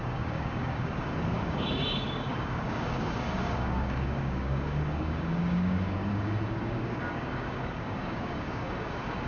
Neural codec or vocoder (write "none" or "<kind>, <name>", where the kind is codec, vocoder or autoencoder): codec, DAC